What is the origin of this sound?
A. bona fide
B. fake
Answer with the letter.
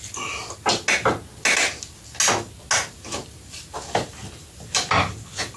A